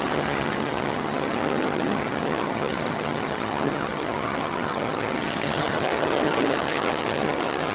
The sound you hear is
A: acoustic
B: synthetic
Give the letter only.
B